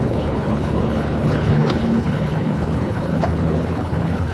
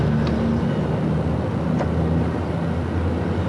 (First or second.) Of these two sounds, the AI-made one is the first